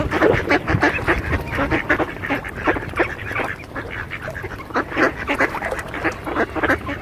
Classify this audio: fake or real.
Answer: real